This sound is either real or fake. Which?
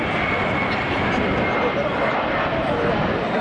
fake